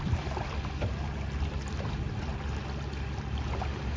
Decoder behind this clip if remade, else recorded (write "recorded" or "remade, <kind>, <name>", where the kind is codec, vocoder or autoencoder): recorded